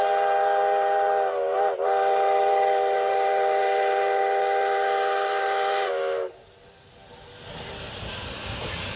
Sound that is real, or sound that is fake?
real